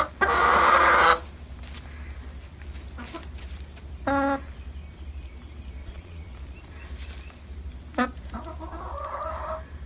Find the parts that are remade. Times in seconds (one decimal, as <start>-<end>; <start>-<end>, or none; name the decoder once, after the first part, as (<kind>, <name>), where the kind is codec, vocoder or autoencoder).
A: 5.8-6.3 (vocoder, Vocos)